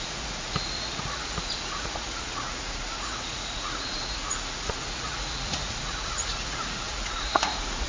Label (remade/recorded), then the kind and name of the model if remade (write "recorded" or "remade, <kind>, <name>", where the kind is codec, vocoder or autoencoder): remade, vocoder, Vocos